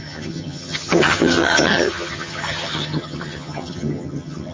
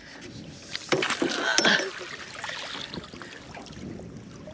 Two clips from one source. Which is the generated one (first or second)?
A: first